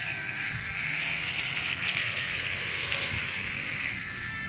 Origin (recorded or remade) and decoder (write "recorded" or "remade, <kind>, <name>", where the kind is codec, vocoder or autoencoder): remade, codec, SNAC